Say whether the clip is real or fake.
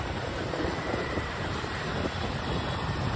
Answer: fake